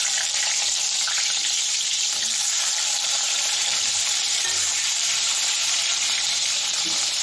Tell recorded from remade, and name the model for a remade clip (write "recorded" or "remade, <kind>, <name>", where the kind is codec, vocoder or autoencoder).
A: remade, vocoder, BigVGAN v2